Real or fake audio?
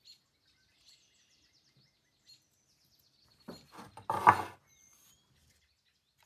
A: real